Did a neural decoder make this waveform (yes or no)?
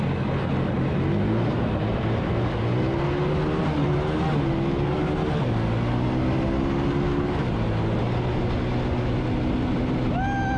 no